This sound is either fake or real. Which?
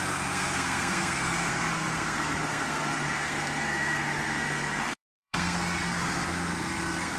fake